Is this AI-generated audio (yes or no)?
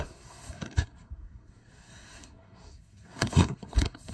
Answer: yes